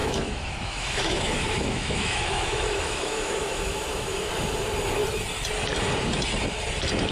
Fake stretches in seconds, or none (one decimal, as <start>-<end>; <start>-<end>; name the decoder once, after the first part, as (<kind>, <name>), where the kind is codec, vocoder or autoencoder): 0.0-4.3 (autoencoder, DAC-VAE)